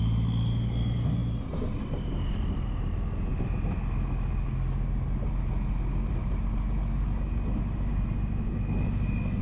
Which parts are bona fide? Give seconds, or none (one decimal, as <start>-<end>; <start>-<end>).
0.0-9.4